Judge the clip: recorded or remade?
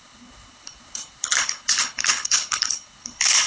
remade